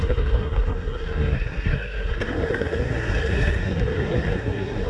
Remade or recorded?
remade